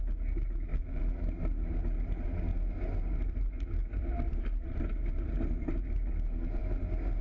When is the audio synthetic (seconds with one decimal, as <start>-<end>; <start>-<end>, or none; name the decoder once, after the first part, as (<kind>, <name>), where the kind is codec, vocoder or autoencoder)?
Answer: 0.7-1.2 (vocoder, BigVGAN v2)